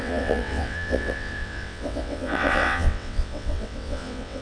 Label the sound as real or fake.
fake